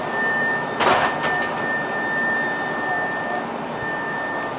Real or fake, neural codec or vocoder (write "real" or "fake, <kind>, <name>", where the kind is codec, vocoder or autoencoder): fake, vocoder, BigVGAN v2